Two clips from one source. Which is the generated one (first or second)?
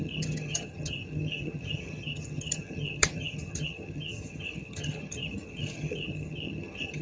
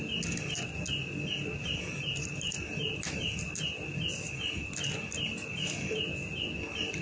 first